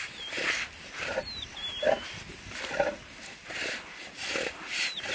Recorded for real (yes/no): yes